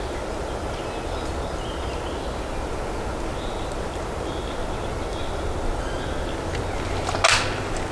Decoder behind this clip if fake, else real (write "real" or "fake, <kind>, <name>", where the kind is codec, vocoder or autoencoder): real